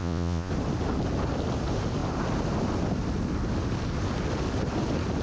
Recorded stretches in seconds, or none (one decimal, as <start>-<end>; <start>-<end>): 0.5-5.2